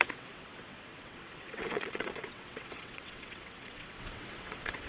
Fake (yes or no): yes